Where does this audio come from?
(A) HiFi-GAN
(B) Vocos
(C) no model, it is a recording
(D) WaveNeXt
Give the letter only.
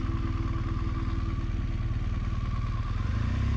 C